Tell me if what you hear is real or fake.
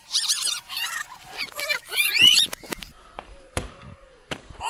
fake